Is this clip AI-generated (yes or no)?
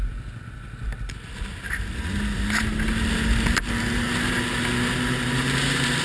no